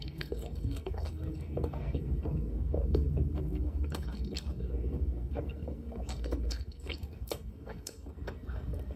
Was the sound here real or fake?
fake